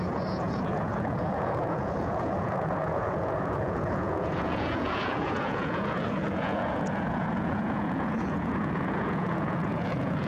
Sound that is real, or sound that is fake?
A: fake